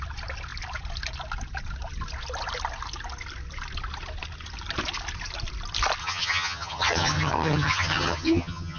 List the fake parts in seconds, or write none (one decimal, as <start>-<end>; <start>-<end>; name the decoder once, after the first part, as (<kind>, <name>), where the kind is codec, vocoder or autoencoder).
6.0-8.8 (vocoder, HiFi-GAN)